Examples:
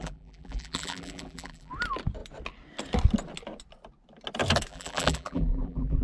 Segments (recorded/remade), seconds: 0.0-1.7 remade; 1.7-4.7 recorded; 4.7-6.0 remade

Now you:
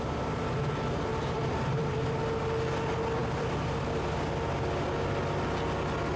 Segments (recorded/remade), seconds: 0.0-1.1 recorded; 1.1-2.2 remade; 2.2-3.2 recorded; 3.2-4.0 remade; 4.0-6.2 recorded